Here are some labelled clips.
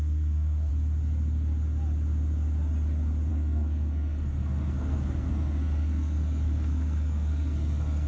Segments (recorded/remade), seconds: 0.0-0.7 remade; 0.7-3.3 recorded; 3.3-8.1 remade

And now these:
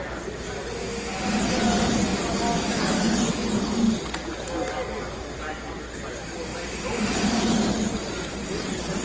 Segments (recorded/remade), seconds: 0.0-9.0 recorded